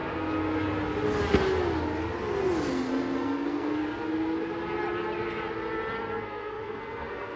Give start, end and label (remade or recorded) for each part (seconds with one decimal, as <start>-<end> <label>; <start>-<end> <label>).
0.0-2.7 recorded; 2.7-3.8 remade; 3.8-6.1 recorded; 6.1-7.4 remade